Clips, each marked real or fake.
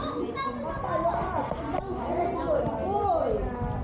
real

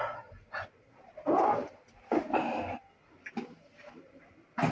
real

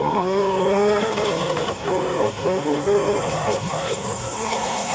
fake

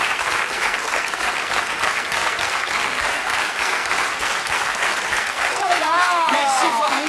fake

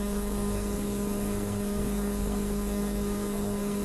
fake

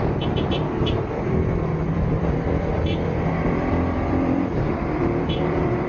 fake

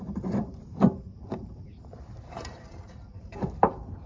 fake